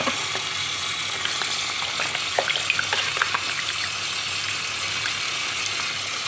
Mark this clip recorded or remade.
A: recorded